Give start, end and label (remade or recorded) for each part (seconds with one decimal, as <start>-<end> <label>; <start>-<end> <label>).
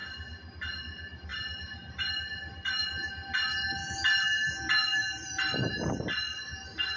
0.0-1.3 recorded; 1.3-2.1 remade; 2.1-7.0 recorded